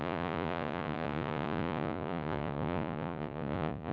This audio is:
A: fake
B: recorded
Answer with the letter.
A